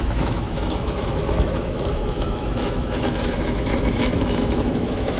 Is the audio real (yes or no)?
no